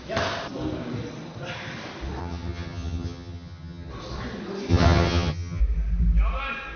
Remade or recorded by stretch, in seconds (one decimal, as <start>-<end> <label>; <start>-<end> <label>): 0.0-2.2 recorded; 2.2-3.9 remade; 3.9-4.7 recorded; 4.7-5.6 remade; 5.6-6.8 recorded